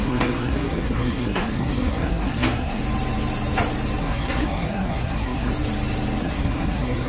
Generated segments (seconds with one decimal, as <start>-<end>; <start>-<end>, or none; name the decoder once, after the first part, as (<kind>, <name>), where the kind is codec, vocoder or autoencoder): 0.0-2.8 (codec, SNAC); 4.0-5.5; 6.2-7.1

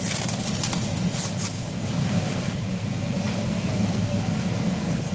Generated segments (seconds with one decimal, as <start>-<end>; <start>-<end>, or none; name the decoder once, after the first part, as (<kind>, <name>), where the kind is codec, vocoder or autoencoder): 2.0-5.1 (codec, SNAC)

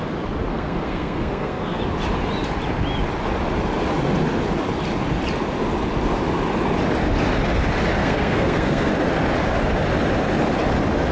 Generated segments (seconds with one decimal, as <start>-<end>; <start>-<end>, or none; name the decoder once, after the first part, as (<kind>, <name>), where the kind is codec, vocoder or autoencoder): 0.5-1.8 (codec, SNAC); 8.0-8.9

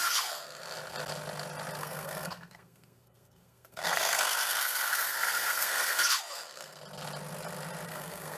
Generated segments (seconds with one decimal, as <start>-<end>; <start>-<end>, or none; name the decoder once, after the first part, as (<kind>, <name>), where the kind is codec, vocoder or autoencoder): 0.0-0.6 (codec, SNAC); 1.8-6.8; 7.9-8.4